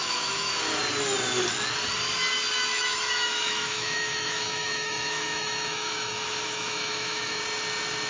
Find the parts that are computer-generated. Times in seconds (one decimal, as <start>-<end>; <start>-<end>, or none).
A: 0.0-0.5; 2.7-7.4